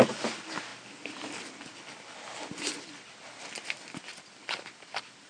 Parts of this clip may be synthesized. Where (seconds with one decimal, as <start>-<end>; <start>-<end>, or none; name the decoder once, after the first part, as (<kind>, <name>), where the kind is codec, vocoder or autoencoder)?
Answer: none

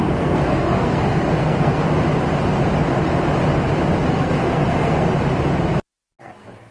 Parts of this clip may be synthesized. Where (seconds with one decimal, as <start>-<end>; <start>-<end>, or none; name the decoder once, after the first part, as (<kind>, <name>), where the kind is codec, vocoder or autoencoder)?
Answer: 0.0-1.8 (codec, SNAC); 4.1-5.1; 6.2-6.7

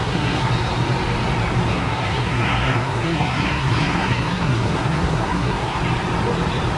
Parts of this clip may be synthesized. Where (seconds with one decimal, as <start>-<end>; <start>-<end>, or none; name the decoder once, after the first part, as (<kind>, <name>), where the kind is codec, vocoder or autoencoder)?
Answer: 0.0-0.5 (codec, SNAC); 1.7-5.8

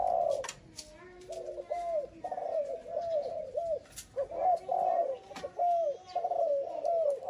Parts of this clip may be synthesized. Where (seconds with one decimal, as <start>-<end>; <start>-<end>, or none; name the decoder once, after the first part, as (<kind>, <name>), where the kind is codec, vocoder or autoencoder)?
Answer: none

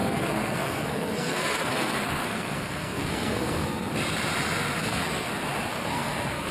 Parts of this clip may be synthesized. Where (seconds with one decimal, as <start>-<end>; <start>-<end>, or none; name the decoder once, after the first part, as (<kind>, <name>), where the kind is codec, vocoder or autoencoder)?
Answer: 0.0-3.9 (codec, SNAC); 4.8-5.3; 5.7-6.5

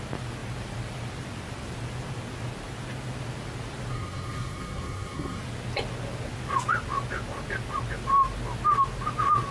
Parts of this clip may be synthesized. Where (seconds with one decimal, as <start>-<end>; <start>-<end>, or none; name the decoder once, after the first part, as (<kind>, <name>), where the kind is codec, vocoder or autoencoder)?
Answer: 3.9-5.4 (codec, SNAC)

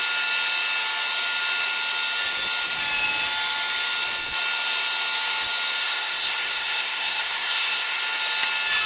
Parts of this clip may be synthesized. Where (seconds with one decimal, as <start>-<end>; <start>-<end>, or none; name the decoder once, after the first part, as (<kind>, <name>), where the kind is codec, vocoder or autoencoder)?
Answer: 5.8-8.0 (codec, SNAC)